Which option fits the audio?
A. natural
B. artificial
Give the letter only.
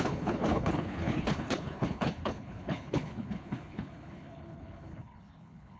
B